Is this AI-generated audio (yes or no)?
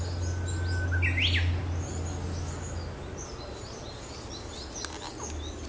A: no